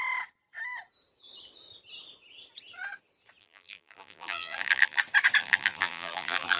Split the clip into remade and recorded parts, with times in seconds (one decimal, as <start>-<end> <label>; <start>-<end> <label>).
0.0-3.4 recorded; 3.4-5.0 remade; 5.0-5.4 recorded; 5.4-6.6 remade